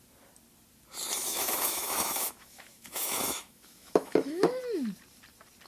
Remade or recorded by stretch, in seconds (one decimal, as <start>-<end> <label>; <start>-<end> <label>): 0.0-1.2 recorded; 1.2-4.6 remade; 4.6-5.7 recorded

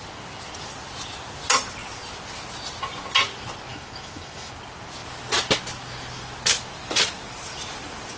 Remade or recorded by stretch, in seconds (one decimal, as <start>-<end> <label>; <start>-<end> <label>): 0.0-3.7 recorded; 3.7-4.5 remade; 4.5-8.2 recorded

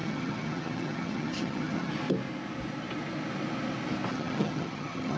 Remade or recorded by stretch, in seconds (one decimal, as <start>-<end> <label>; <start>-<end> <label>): 0.0-1.9 remade; 1.9-4.1 recorded; 4.1-5.2 remade

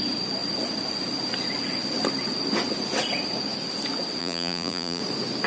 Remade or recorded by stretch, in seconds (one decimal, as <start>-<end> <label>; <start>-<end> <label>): 0.0-4.2 recorded; 4.2-5.0 remade; 5.0-5.5 recorded